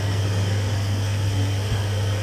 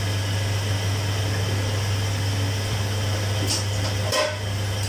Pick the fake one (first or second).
first